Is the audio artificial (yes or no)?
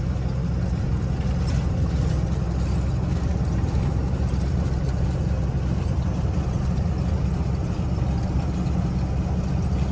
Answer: no